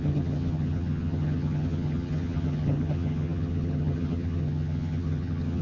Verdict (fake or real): fake